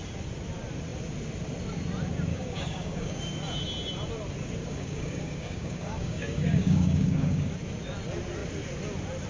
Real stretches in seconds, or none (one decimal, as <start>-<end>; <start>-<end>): 0.0-2.3; 3.2-4.6; 7.5-9.3